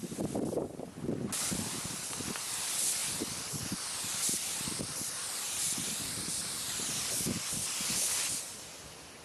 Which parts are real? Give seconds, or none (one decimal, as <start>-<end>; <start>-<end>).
0.0-9.2